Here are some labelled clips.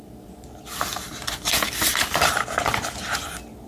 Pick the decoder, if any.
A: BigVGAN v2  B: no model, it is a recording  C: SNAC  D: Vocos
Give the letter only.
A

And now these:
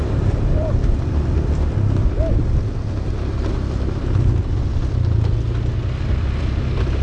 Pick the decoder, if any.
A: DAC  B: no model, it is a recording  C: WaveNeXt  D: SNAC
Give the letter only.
B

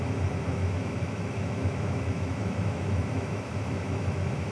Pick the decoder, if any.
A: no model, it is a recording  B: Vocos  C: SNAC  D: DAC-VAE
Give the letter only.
D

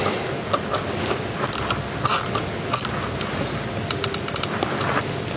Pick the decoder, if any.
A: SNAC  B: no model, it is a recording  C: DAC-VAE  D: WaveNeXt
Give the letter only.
B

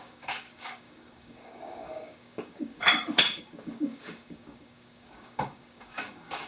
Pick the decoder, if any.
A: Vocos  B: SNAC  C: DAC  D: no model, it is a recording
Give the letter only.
C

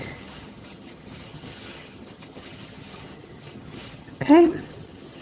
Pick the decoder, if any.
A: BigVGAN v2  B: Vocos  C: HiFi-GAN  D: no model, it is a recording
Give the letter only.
C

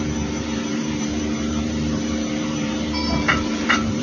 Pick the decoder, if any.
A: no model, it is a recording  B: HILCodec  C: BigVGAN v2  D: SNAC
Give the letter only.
C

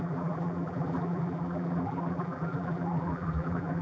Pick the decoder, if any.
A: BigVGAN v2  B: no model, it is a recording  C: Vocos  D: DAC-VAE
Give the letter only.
A